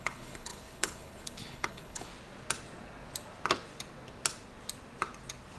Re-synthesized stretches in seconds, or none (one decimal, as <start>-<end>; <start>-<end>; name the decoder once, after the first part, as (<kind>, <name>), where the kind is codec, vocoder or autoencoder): 0.0-2.1 (codec, HILCodec)